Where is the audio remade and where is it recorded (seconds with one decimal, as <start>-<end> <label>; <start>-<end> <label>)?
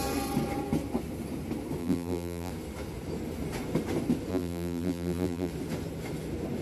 0.0-1.8 recorded; 1.8-2.5 remade; 2.5-4.3 recorded; 4.3-5.5 remade; 5.5-6.6 recorded